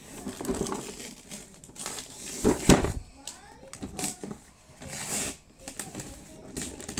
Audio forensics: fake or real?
real